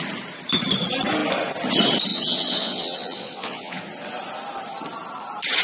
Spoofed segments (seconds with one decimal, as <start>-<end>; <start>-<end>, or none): 2.1-3.8

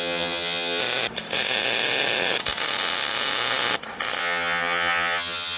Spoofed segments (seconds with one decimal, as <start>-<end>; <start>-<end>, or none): 0.0-0.8; 4.2-5.6

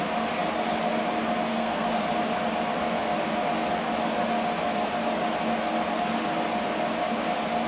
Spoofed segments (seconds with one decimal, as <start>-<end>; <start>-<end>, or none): 1.5-2.0

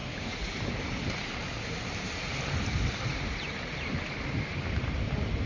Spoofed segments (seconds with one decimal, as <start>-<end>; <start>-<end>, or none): 0.0-5.5

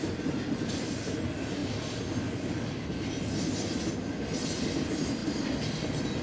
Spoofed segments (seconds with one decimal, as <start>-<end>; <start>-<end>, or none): none

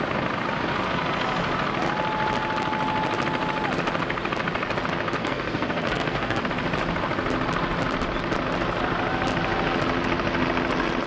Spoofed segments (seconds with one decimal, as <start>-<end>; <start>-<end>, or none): 5.2-6.5